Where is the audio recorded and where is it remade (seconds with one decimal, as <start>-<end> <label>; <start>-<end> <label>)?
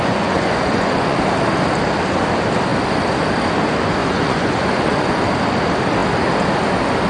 0.0-1.2 remade; 1.2-4.0 recorded; 4.0-5.2 remade; 5.2-7.1 recorded